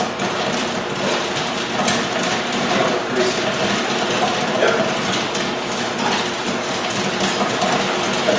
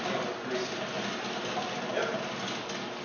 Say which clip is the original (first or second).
second